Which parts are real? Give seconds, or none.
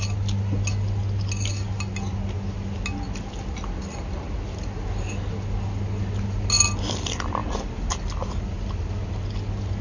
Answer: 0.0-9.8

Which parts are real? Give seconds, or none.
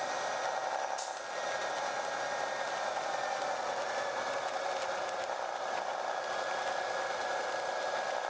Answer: 0.0-8.3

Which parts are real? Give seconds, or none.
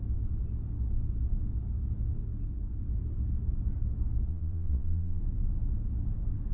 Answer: 0.0-4.3; 5.2-6.5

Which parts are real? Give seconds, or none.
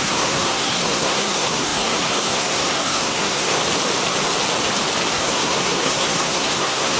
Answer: 3.6-5.1